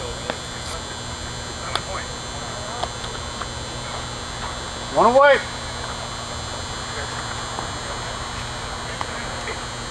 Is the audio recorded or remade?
recorded